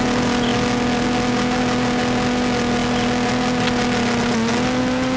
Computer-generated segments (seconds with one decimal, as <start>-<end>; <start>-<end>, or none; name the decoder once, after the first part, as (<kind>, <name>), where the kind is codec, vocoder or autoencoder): none